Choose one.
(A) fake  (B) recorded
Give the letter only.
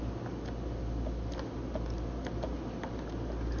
B